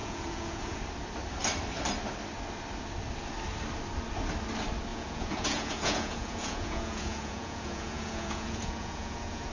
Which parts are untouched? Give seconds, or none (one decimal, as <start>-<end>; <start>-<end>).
0.8-4.9